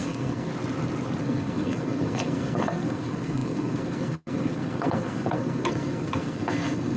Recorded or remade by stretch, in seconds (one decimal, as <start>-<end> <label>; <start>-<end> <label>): 0.0-0.5 remade; 0.5-1.2 recorded; 1.2-7.0 remade